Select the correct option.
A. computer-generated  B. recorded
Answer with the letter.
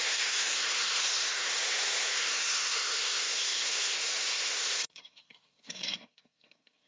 A